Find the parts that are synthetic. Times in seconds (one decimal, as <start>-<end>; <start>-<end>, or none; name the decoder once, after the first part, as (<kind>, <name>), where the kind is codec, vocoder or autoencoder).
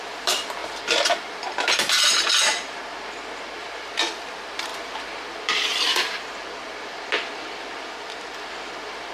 0.0-0.6 (vocoder, BigVGAN v2); 2.0-2.8; 3.6-9.1